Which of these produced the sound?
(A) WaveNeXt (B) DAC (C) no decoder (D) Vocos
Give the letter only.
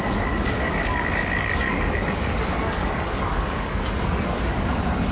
B